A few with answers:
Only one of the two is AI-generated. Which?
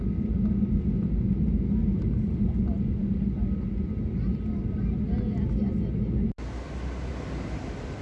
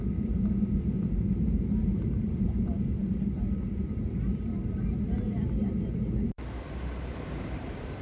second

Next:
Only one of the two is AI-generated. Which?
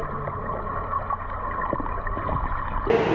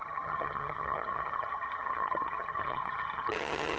second